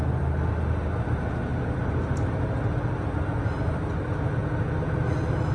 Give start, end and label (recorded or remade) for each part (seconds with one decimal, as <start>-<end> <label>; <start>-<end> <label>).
0.0-5.5 recorded